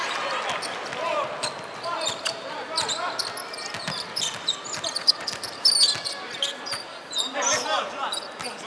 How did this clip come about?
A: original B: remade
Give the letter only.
A